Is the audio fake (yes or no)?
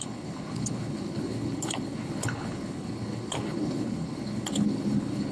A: yes